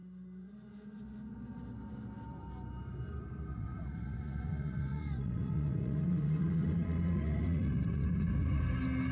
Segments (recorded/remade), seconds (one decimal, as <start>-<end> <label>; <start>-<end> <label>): 0.0-3.5 recorded; 3.5-8.6 remade; 8.6-9.1 recorded